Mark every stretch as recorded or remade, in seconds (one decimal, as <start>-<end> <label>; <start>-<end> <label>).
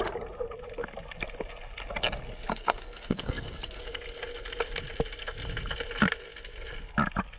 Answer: 0.0-2.5 recorded; 2.5-3.8 remade; 3.8-7.4 recorded